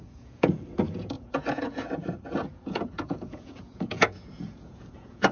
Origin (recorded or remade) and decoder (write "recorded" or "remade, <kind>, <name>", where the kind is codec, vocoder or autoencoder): remade, vocoder, Vocos